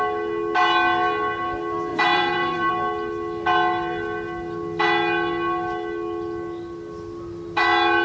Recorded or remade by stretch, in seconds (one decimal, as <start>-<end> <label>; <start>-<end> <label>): 0.0-1.9 recorded; 1.9-2.7 remade; 2.7-8.0 recorded

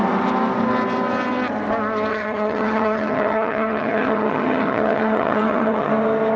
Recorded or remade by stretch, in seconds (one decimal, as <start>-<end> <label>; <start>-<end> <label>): 0.0-2.1 recorded; 2.1-5.9 remade; 5.9-6.4 recorded